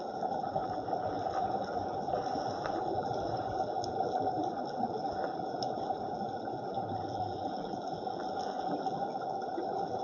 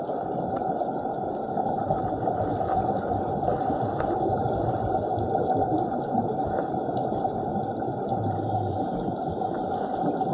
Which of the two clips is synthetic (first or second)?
first